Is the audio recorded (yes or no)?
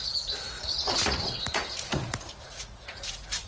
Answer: no